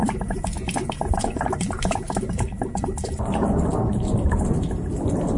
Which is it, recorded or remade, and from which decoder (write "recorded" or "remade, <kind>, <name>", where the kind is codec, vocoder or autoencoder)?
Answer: remade, vocoder, BigVGAN v2